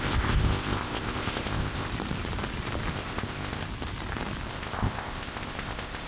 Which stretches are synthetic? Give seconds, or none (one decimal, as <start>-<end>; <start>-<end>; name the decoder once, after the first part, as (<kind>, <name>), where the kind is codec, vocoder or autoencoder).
0.0-1.9 (codec, ZipCodec); 2.9-3.6; 4.5-6.1